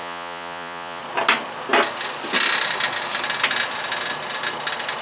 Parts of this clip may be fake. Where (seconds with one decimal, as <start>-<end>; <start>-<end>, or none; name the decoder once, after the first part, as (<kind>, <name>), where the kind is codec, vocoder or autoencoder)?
0.0-1.0 (vocoder, Vocos)

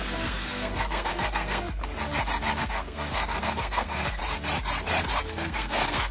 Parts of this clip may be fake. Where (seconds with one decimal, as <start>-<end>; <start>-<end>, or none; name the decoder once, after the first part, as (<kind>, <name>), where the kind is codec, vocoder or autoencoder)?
0.0-1.8 (codec, SNAC); 2.6-4.2; 5.2-6.1